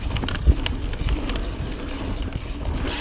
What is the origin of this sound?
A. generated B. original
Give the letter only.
A